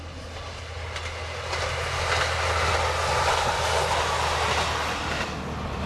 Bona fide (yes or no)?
yes